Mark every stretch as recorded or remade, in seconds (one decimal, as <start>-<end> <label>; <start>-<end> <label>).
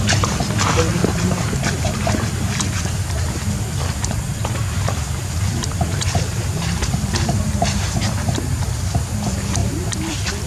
0.0-1.0 recorded; 1.0-3.5 remade; 3.5-5.9 recorded; 5.9-8.6 remade; 8.6-9.6 recorded; 9.6-10.5 remade